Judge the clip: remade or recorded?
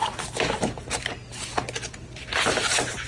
recorded